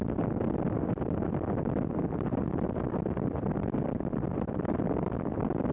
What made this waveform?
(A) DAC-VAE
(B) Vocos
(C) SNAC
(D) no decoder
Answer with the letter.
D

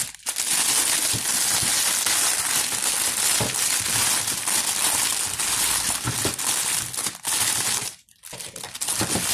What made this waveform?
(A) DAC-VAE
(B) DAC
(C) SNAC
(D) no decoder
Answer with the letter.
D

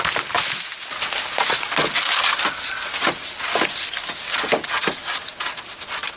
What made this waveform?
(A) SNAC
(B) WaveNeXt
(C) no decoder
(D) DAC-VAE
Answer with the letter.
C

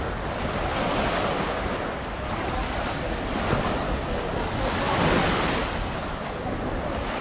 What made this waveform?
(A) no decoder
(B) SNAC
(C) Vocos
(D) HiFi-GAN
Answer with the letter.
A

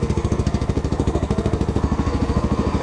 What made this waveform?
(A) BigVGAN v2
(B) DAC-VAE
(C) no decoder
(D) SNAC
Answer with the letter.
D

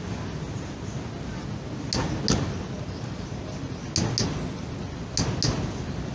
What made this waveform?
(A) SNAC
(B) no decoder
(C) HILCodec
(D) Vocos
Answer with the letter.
B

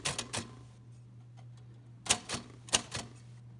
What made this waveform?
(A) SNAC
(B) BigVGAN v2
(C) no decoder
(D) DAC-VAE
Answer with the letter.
C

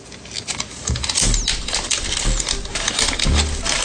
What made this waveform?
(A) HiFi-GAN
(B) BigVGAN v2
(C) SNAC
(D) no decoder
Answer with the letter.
D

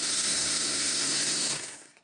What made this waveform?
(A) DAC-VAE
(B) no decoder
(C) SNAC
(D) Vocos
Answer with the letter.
C